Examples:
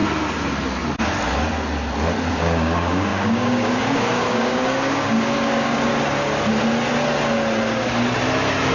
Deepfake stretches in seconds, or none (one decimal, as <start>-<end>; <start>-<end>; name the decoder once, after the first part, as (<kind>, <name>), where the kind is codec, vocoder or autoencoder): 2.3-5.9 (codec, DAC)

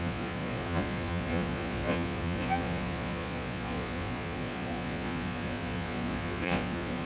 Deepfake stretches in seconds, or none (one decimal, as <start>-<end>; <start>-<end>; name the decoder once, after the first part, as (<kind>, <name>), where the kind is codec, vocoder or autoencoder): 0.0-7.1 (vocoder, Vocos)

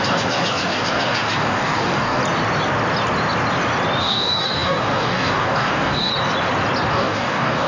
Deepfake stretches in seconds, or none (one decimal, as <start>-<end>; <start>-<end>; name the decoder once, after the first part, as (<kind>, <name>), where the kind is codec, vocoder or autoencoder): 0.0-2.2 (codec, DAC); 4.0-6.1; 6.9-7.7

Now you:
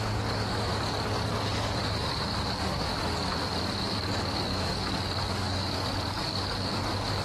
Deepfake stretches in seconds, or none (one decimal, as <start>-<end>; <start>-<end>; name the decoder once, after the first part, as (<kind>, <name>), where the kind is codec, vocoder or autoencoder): 0.0-0.7 (codec, DAC); 1.3-2.9; 3.8-7.2

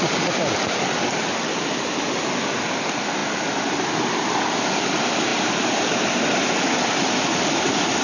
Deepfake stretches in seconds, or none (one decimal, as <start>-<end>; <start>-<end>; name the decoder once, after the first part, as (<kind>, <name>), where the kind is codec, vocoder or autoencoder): none